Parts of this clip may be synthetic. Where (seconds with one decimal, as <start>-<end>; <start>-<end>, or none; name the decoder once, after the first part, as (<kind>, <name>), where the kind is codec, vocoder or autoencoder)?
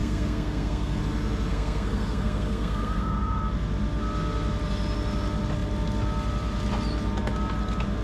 0.0-1.0 (codec, SNAC); 1.5-3.4